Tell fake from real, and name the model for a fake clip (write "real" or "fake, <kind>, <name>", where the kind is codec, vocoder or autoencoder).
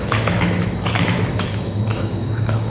fake, autoencoder, DAC-VAE